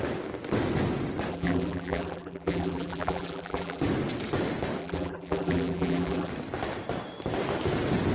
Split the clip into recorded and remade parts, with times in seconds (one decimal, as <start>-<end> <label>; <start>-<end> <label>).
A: 0.0-1.3 recorded; 1.3-3.8 remade; 3.8-4.8 recorded; 4.8-6.3 remade; 6.3-8.1 recorded